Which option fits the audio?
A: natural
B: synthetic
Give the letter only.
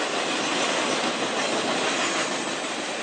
A